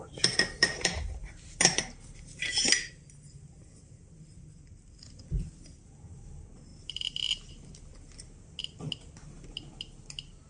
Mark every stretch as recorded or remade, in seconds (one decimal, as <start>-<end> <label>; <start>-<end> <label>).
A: 0.0-10.5 recorded